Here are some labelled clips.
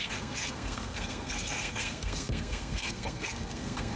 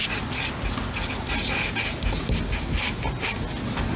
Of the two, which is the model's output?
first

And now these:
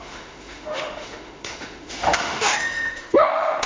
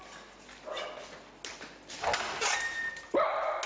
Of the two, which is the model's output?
first